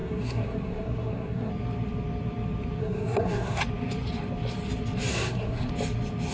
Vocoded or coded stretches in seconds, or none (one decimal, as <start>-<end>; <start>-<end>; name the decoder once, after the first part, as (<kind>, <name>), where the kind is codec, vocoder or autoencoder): 0.0-1.5 (codec, SNAC); 2.8-3.6; 5.1-5.7